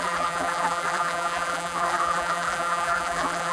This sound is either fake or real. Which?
fake